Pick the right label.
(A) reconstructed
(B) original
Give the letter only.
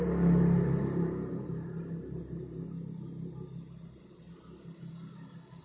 B